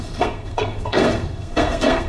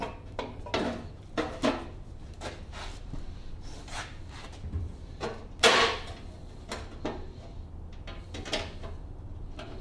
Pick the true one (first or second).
second